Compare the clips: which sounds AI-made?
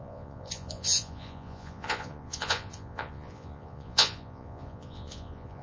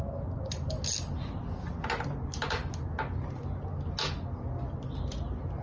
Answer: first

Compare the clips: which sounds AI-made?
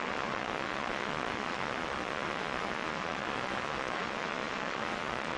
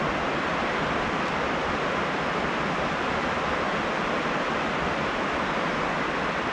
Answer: first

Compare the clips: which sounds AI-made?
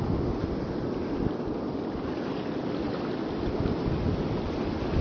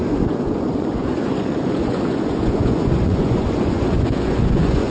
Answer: second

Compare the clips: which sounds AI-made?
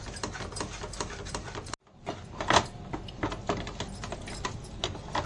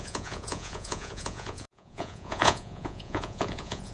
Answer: second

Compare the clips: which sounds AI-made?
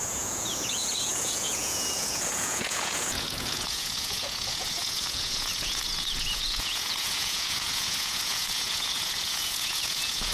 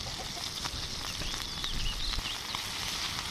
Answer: first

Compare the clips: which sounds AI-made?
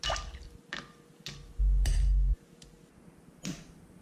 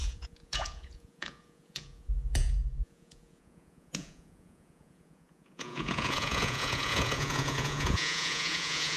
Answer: second